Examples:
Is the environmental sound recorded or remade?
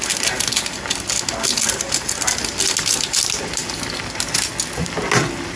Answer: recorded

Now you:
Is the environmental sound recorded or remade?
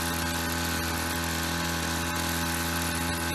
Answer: recorded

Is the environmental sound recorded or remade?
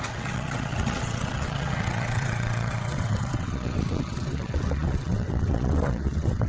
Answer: remade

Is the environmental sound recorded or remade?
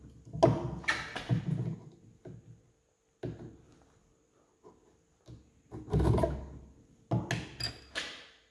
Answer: recorded